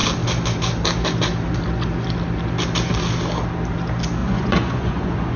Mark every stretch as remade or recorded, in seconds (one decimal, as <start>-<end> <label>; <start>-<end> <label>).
0.0-4.2 recorded; 4.2-5.4 remade